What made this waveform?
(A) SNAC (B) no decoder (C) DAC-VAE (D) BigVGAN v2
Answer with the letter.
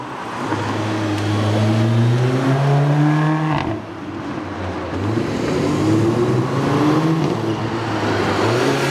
B